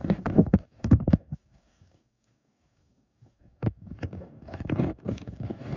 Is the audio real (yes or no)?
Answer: no